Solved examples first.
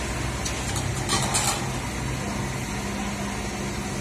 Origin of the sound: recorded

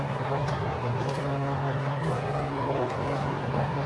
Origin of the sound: remade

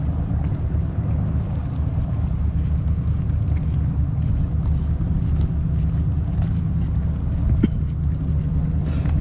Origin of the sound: recorded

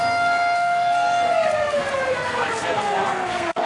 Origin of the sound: remade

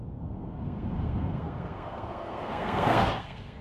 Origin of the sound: remade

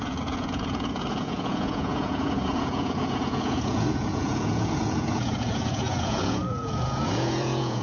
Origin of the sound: remade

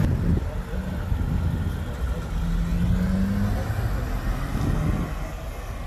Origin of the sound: recorded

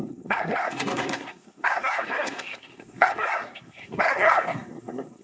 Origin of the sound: remade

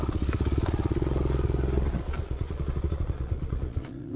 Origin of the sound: remade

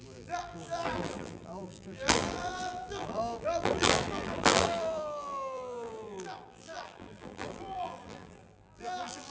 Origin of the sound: remade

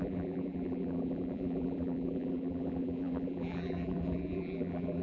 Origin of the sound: remade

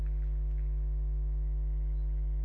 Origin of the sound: recorded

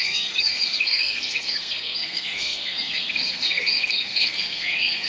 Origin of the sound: remade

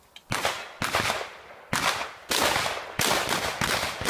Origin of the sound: recorded